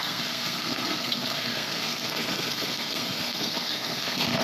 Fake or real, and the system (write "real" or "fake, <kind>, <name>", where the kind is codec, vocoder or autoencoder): fake, codec, SNAC